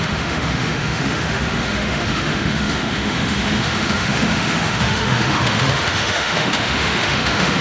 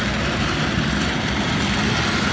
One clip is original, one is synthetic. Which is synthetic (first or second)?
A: first